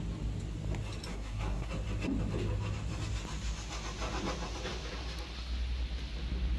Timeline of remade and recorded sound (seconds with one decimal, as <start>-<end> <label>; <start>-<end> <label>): 0.0-1.1 recorded; 1.1-1.7 remade; 1.7-6.6 recorded